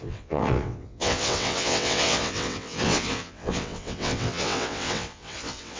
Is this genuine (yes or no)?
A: no